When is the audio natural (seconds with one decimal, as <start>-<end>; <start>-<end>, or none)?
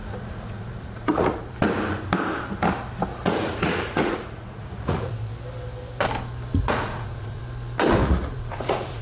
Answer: 1.5-3.1; 5.1-6.5; 7.4-8.0